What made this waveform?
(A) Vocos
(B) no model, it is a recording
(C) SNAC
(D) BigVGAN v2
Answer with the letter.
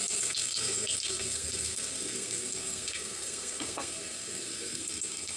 C